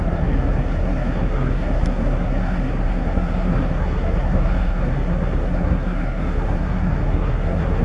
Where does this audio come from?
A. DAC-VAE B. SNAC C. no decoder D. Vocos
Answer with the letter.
B